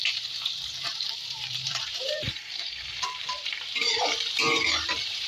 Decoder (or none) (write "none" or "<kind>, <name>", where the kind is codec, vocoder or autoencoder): vocoder, BigVGAN v2